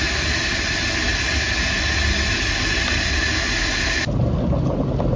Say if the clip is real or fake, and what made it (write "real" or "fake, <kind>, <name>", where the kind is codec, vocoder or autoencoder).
real